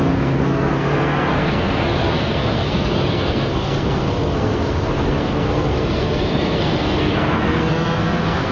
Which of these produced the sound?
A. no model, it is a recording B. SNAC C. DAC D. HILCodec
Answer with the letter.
B